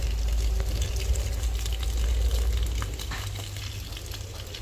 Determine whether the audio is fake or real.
real